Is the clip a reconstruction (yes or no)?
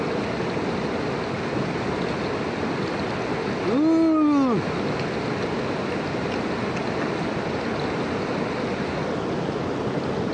no